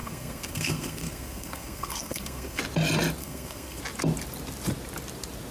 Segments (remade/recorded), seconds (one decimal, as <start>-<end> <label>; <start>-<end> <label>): 0.0-2.6 remade; 2.6-3.2 recorded; 3.2-3.8 remade; 3.8-5.5 recorded